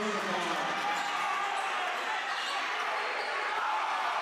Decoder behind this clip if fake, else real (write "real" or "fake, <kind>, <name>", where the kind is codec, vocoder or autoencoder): real